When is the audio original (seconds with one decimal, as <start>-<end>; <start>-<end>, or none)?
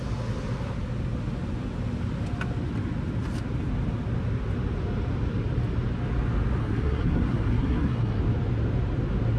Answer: 0.0-6.6; 8.2-9.4